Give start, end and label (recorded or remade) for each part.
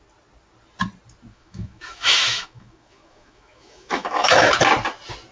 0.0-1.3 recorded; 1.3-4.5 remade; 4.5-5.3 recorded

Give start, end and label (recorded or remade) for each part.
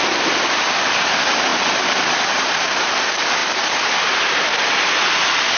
0.0-5.6 recorded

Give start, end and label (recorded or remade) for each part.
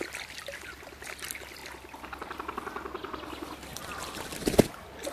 0.0-5.1 recorded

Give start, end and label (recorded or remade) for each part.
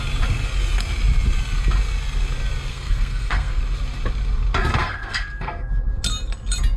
0.0-2.7 recorded; 2.7-3.6 remade; 3.6-4.7 recorded; 4.7-5.7 remade; 5.7-6.8 recorded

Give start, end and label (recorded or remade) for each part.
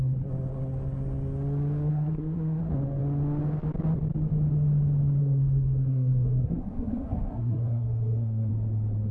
0.0-1.9 recorded; 1.9-2.6 remade; 2.6-5.2 recorded; 5.2-8.5 remade; 8.5-9.1 recorded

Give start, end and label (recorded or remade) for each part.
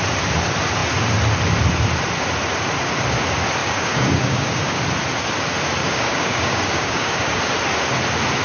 0.0-3.6 recorded; 3.6-4.8 remade; 4.8-5.8 recorded; 5.8-7.4 remade; 7.4-8.4 recorded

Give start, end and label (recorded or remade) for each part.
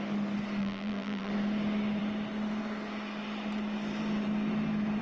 0.0-0.6 recorded; 0.6-1.3 remade; 1.3-5.0 recorded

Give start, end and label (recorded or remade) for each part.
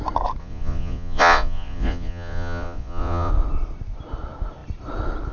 0.0-0.4 recorded; 0.4-3.3 remade; 3.3-5.3 recorded